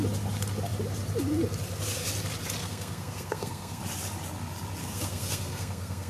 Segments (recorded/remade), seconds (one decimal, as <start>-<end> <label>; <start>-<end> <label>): 0.0-2.6 recorded; 2.6-3.8 remade; 3.8-4.8 recorded; 4.8-6.1 remade